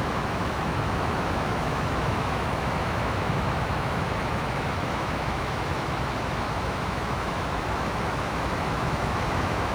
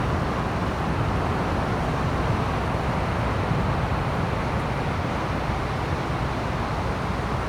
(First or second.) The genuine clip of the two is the second